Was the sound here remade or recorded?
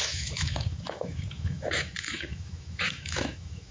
remade